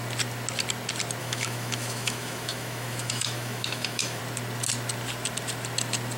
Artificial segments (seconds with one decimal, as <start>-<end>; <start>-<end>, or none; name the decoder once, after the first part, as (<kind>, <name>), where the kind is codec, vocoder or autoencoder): 1.2-4.2 (autoencoder, DAC-VAE)